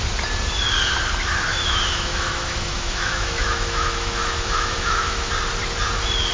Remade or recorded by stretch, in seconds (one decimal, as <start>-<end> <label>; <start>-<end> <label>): 0.0-1.5 recorded; 1.5-5.3 remade; 5.3-6.3 recorded